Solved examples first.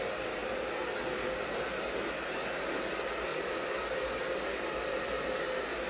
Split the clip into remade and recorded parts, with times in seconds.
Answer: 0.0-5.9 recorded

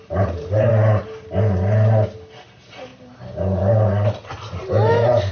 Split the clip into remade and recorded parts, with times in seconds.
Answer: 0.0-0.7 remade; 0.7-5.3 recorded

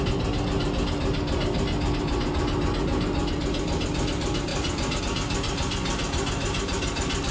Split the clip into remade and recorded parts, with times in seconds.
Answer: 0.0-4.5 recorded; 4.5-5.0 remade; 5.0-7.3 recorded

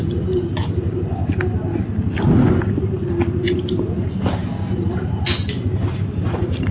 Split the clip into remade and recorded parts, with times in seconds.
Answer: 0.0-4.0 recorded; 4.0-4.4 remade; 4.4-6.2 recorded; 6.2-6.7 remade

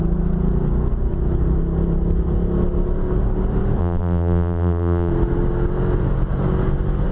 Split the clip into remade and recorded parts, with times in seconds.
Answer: 0.0-3.8 recorded; 3.8-5.1 remade; 5.1-7.1 recorded